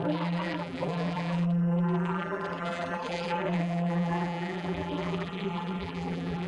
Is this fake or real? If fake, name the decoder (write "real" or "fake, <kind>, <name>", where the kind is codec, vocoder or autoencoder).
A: fake, vocoder, BigVGAN v2